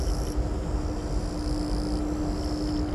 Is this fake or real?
real